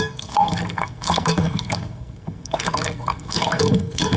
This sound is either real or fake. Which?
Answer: fake